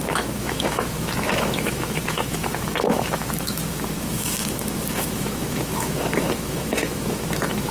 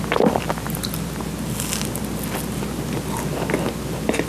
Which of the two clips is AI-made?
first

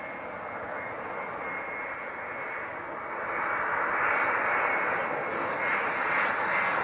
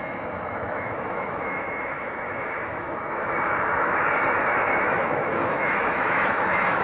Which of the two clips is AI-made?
second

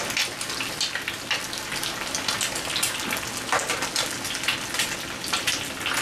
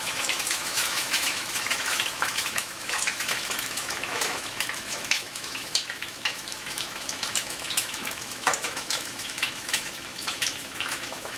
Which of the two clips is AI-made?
second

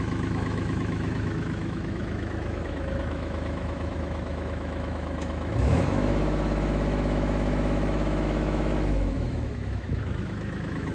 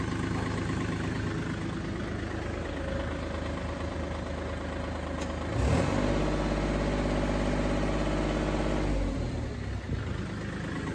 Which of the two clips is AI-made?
first